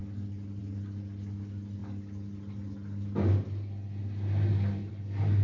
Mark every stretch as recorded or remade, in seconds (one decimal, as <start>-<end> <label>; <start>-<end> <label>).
0.0-5.4 recorded